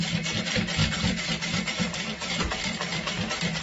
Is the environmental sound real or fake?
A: fake